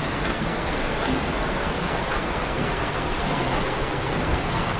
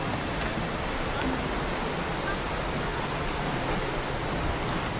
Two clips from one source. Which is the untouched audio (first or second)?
second